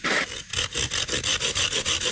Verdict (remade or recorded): recorded